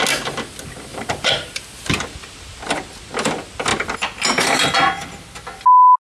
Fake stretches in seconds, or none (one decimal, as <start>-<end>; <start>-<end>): 0.9-2.7